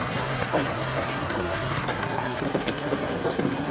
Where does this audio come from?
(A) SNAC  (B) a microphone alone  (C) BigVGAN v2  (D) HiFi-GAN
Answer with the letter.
A